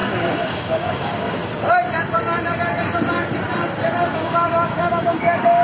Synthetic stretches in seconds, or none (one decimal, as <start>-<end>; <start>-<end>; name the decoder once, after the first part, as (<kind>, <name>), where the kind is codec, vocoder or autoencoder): 0.0-1.4 (codec, DAC); 4.1-5.6